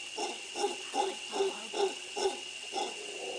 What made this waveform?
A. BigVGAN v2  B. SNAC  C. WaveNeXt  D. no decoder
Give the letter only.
C